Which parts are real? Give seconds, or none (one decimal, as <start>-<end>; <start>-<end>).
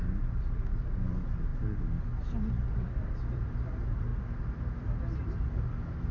1.5-2.5; 4.1-4.7